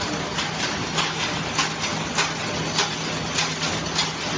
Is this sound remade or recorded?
recorded